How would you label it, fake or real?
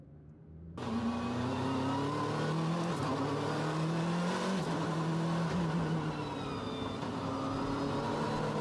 real